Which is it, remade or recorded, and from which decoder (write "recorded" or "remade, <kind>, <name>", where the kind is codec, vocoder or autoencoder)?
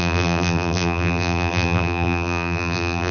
remade, vocoder, BigVGAN v2